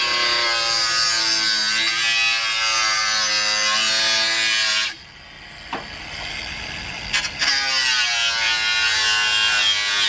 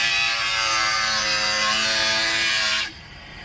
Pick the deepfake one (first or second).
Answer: second